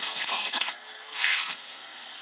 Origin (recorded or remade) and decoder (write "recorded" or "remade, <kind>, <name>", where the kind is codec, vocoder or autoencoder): remade, codec, SNAC